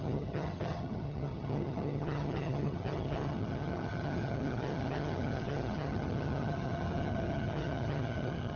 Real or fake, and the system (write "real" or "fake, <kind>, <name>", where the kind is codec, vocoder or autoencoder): fake, vocoder, HiFi-GAN